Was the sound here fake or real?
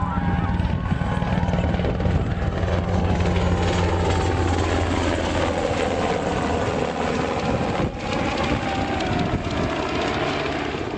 real